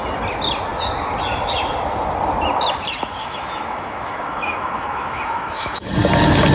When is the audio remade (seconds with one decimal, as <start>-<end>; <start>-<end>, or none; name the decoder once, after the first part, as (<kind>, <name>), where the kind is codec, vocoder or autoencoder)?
3.2-5.9 (autoencoder, DAC-VAE)

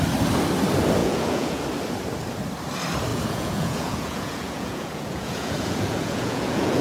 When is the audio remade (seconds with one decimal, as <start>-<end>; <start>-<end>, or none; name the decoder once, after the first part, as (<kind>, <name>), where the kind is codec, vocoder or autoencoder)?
1.0-1.6 (vocoder, Vocos); 3.1-6.8